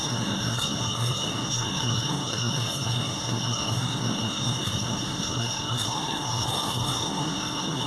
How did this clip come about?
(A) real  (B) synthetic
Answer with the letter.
B